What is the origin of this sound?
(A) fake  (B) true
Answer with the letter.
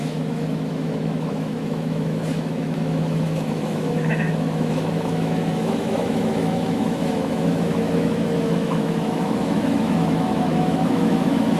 A